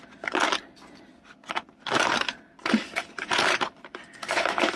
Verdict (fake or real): fake